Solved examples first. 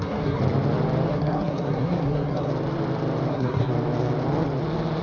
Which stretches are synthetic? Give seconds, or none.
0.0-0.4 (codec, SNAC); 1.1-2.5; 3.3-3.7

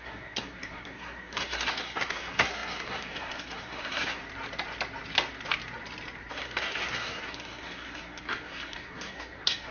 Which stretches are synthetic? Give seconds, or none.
0.0-4.2 (codec, SNAC); 6.3-9.7

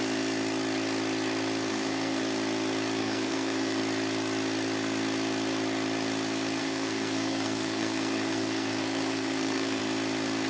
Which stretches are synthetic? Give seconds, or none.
1.7-2.2 (codec, SNAC); 3.0-3.8; 6.6-9.8

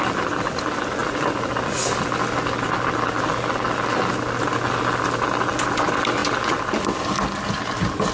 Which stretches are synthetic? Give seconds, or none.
none

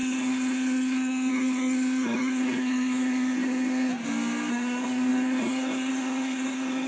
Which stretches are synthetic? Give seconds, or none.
0.0-3.9 (codec, SNAC); 4.5-6.9

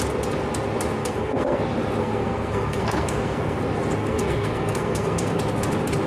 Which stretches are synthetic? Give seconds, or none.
1.0-1.6 (codec, SNAC); 2.0-3.6; 4.0-5.4

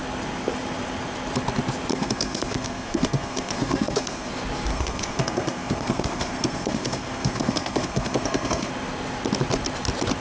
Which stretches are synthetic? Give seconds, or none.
1.9-4.3 (codec, SNAC); 4.7-8.7

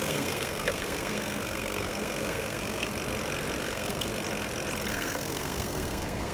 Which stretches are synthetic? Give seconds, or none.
0.0-2.9 (codec, SNAC); 3.6-4.1; 4.9-6.3